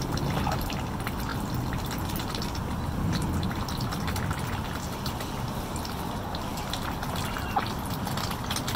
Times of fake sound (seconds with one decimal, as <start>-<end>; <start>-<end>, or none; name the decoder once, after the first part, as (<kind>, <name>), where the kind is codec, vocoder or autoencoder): none